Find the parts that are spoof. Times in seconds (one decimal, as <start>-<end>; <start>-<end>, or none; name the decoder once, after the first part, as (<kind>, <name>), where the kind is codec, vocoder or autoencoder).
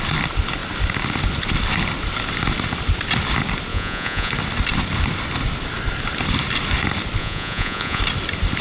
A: 3.7-4.3 (vocoder, Vocos); 7.2-8.0